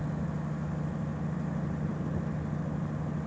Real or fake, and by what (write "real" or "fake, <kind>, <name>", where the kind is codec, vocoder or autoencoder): real